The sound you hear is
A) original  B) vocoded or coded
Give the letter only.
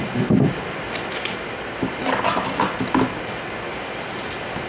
A